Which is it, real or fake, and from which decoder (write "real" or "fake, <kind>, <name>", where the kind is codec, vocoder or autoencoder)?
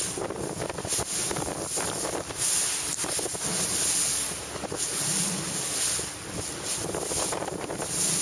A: real